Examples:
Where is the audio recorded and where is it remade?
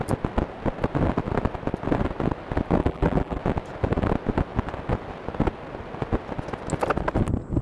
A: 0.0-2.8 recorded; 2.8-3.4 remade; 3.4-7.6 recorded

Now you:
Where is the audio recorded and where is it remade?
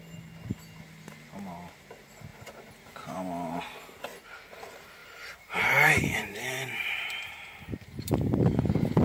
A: 0.0-2.3 recorded; 2.3-3.6 remade; 3.6-5.0 recorded; 5.0-9.0 remade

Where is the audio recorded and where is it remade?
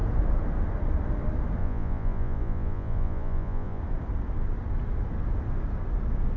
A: 0.0-1.6 recorded; 1.6-3.8 remade; 3.8-6.4 recorded